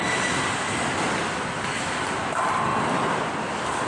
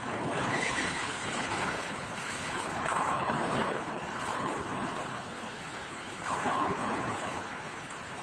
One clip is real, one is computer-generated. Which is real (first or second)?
first